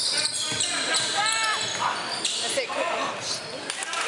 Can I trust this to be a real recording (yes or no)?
yes